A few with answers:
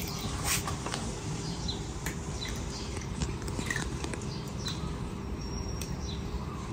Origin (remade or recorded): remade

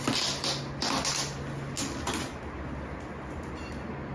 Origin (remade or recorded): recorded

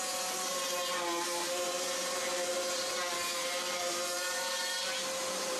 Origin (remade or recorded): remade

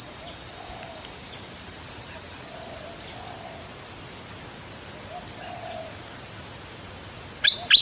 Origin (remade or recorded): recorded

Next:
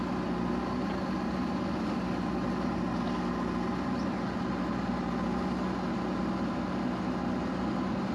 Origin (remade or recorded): recorded